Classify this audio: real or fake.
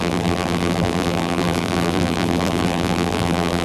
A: fake